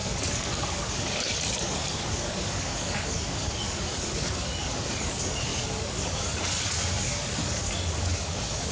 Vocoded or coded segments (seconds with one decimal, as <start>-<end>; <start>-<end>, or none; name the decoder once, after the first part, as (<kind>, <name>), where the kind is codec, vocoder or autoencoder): 0.0-8.7 (codec, DAC)